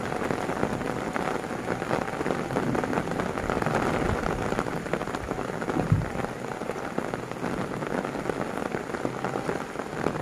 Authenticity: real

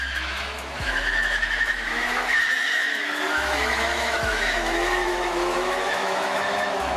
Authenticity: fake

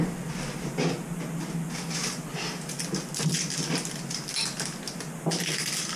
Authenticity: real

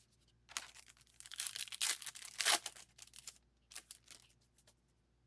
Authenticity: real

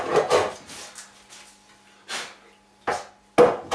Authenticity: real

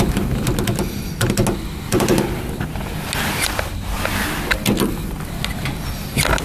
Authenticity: real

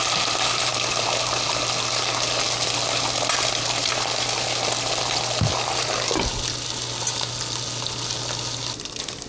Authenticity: real